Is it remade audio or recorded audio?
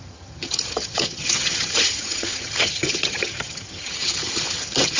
remade